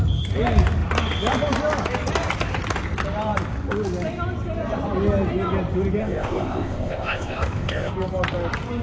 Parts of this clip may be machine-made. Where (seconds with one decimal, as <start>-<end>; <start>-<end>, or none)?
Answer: 6.0-7.9